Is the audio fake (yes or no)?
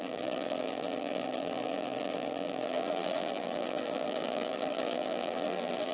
yes